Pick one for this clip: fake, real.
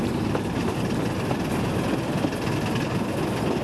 real